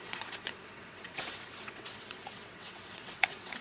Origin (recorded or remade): remade